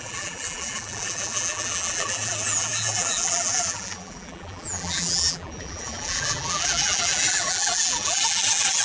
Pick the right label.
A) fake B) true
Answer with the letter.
A